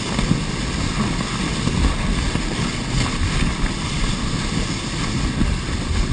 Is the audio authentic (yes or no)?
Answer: yes